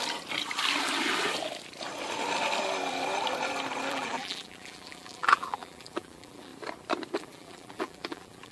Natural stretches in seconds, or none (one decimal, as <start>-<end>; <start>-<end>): 0.0-3.9; 6.5-7.2